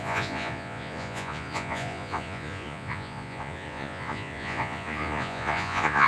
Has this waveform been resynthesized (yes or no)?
yes